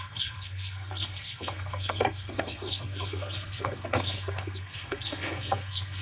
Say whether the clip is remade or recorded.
remade